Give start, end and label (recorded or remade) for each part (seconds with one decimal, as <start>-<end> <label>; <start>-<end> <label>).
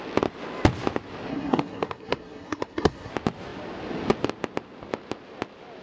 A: 0.0-1.3 recorded; 1.3-3.1 remade; 3.1-5.8 recorded